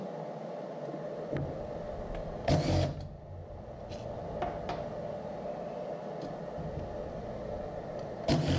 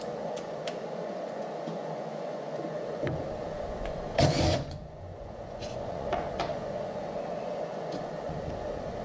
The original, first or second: first